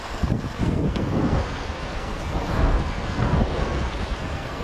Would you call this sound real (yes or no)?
no